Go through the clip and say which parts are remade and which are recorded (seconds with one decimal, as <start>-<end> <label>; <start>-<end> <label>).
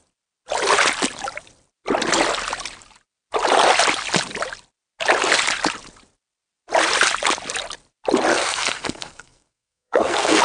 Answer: 0.0-8.3 recorded; 8.3-10.4 remade